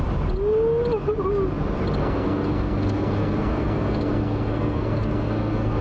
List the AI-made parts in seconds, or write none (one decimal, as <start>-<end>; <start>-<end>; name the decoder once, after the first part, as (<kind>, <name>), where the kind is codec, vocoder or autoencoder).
2.0-5.8 (codec, SNAC)